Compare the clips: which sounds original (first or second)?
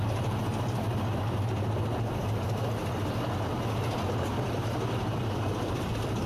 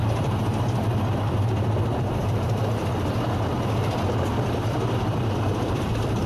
first